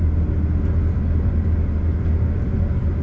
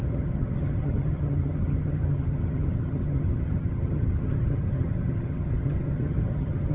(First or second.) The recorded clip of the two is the first